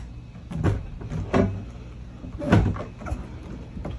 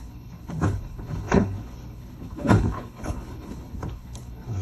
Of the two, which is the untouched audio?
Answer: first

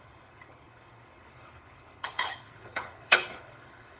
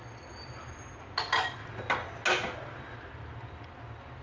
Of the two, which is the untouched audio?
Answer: second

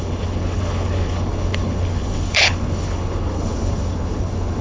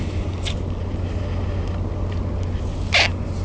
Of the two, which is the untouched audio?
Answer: second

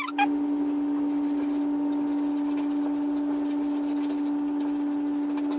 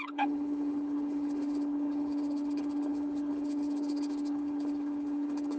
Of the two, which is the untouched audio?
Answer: first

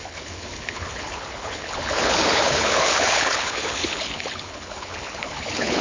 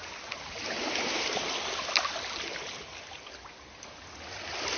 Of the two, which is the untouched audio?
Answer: second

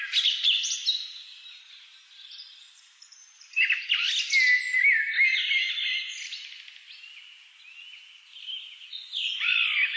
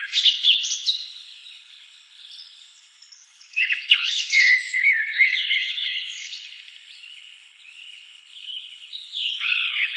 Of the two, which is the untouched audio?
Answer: first